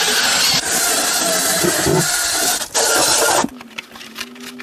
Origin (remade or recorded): recorded